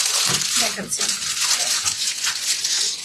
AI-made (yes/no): yes